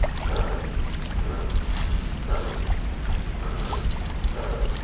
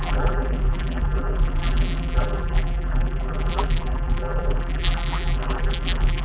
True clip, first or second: first